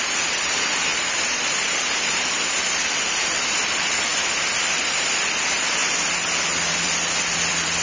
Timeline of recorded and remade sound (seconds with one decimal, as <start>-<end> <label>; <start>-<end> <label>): 0.0-5.8 remade; 5.8-6.7 recorded; 6.7-7.8 remade